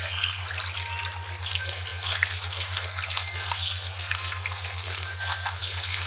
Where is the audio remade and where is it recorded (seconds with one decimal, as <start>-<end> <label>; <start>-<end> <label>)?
0.0-0.4 remade; 0.4-1.4 recorded; 1.4-6.1 remade